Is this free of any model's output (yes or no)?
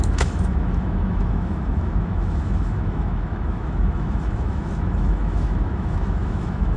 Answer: no